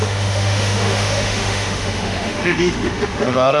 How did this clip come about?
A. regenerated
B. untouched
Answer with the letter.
A